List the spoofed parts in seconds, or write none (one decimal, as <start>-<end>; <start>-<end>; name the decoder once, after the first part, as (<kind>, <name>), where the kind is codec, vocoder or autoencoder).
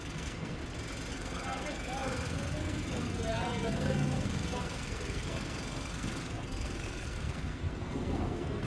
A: 0.0-0.6 (codec, SNAC); 1.1-8.7